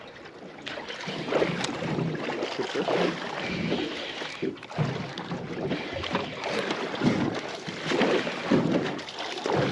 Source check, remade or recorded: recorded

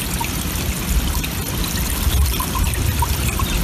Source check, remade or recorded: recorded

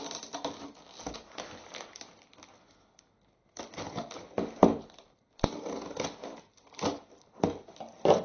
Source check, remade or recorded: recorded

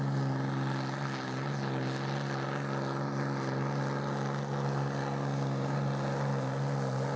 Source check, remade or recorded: recorded